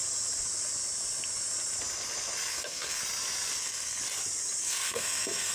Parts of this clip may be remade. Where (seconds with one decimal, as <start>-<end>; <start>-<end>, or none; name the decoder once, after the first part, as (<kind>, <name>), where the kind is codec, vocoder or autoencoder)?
2.5-3.0 (codec, SNAC); 3.6-4.0; 4.6-5.5